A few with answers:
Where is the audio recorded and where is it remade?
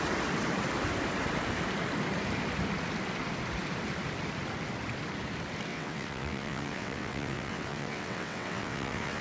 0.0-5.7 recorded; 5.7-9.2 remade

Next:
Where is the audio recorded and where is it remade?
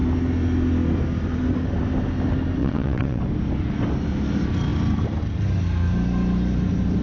0.0-2.6 recorded; 2.6-3.2 remade; 3.2-7.0 recorded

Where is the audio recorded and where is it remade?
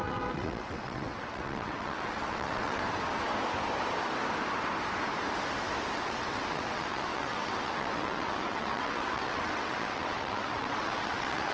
0.0-2.8 remade; 2.8-5.9 recorded; 5.9-11.5 remade